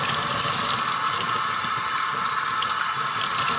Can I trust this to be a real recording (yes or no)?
yes